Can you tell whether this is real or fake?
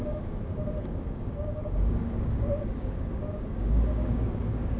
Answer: fake